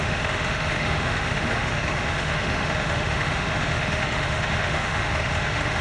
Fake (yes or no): yes